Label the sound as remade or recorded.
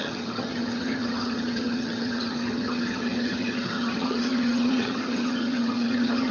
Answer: remade